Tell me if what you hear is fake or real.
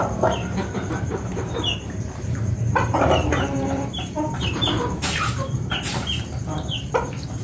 fake